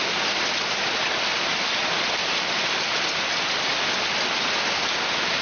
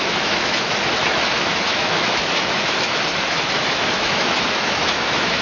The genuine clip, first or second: first